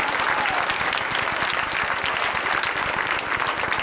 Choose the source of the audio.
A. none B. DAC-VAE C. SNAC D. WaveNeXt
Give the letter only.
A